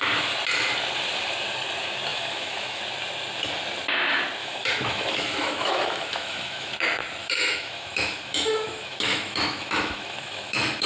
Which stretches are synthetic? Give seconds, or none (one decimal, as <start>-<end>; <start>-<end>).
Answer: 2.1-2.8; 4.4-6.7; 7.2-10.9